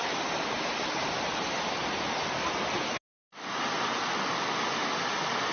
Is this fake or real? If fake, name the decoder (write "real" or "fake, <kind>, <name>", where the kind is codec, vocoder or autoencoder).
real